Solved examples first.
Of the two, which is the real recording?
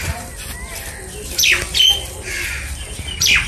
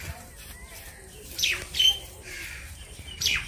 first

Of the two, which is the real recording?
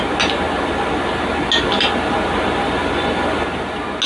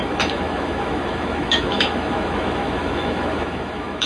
first